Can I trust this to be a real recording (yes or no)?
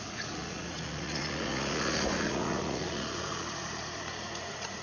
no